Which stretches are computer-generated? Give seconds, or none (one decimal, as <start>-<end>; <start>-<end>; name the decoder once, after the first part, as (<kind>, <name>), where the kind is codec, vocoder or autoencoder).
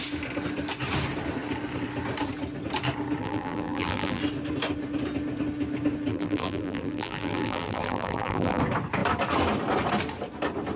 3.2-4.2 (vocoder, BigVGAN v2); 6.1-8.6